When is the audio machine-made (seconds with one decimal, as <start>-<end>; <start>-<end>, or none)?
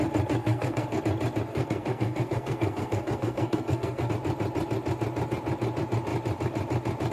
0.4-1.0; 1.5-4.1